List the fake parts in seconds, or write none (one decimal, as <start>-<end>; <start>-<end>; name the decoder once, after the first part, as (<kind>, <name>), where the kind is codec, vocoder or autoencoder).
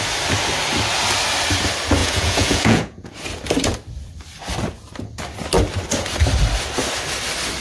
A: 2.0-3.1 (vocoder, Vocos)